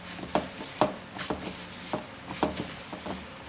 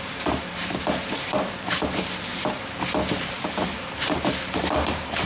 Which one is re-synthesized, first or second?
second